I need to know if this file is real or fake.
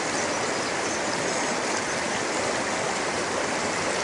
real